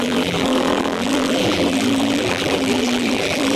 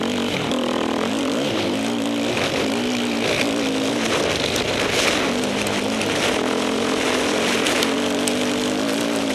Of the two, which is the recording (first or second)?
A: second